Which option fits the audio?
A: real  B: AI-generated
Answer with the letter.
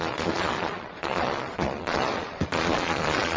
B